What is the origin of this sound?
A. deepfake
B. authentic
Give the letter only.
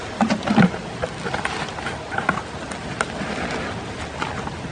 B